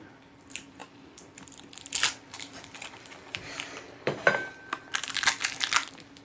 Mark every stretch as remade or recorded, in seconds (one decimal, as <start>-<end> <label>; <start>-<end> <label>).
0.0-0.8 recorded; 0.8-4.5 remade; 4.5-6.2 recorded